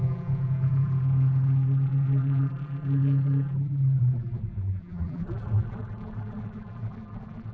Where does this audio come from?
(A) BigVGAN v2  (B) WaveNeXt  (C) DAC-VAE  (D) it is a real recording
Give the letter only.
A